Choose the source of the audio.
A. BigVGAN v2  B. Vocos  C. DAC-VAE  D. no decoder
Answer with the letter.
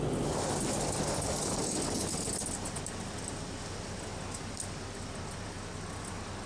D